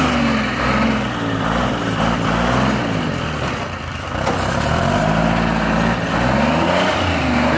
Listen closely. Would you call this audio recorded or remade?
recorded